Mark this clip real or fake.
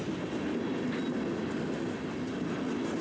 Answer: real